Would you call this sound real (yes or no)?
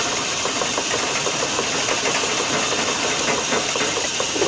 no